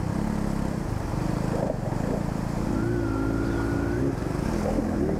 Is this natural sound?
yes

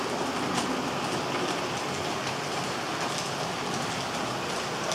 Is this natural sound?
yes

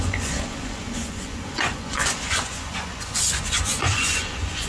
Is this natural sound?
no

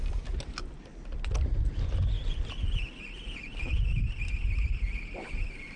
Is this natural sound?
yes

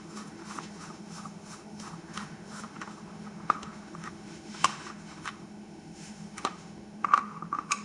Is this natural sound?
no